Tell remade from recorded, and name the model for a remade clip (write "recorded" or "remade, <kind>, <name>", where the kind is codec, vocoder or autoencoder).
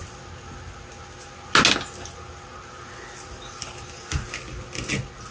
recorded